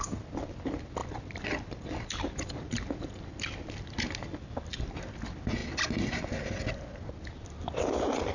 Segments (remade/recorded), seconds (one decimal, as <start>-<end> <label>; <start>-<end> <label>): 0.0-1.0 recorded; 1.0-4.9 remade; 4.9-8.3 recorded